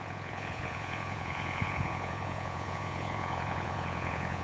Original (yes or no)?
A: no